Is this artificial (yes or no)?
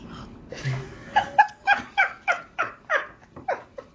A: yes